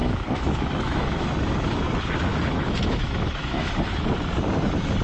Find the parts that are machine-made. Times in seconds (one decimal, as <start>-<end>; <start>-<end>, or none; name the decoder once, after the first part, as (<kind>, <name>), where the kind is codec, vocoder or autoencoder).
0.0-1.3 (autoencoder, DAC-VAE); 2.3-3.7